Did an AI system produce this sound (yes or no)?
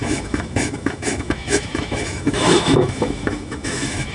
yes